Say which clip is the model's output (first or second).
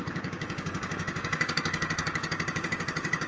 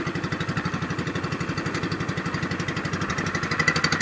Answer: first